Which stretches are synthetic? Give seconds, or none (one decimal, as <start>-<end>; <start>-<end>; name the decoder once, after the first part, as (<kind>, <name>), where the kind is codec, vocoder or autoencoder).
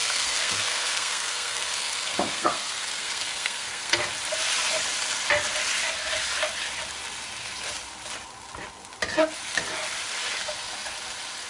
0.0-4.0 (codec, SNAC)